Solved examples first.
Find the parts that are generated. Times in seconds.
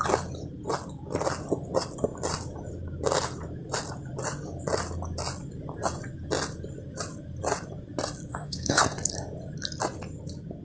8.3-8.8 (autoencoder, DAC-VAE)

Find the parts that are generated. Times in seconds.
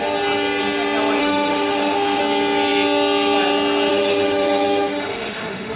1.2-2.2 (autoencoder, DAC-VAE); 3.9-5.8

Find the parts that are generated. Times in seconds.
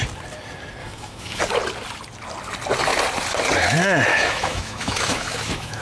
0.8-1.4 (autoencoder, DAC-VAE); 4.1-5.8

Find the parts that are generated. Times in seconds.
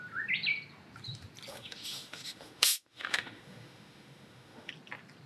1.5-4.7 (autoencoder, DAC-VAE)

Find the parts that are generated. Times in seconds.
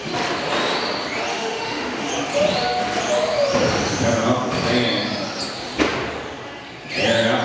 1.3-2.1 (autoencoder, DAC-VAE)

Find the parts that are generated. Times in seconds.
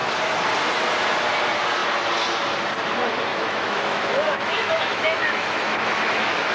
3.3-6.5 (autoencoder, DAC-VAE)